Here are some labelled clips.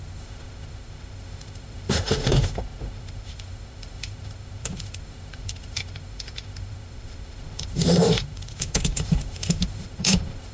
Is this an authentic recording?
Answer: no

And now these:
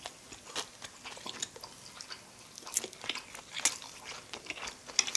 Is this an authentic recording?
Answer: yes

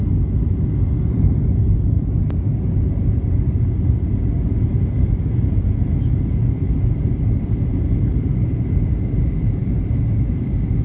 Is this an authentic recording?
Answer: yes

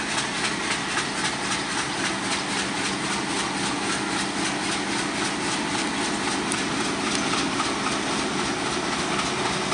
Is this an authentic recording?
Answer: yes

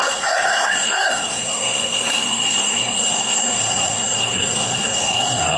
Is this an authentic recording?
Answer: no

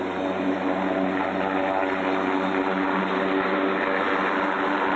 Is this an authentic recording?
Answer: yes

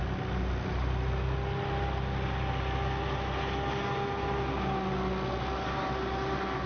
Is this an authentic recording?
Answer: yes